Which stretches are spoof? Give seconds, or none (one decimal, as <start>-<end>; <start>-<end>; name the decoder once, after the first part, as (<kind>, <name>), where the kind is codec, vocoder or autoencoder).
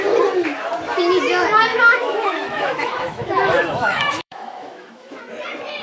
1.7-5.2 (autoencoder, DAC-VAE)